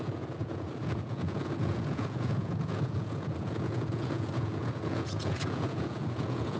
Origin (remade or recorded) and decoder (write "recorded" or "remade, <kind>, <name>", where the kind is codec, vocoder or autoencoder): remade, vocoder, Vocos